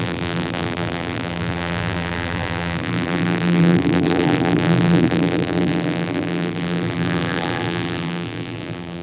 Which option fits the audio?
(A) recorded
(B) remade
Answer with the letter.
B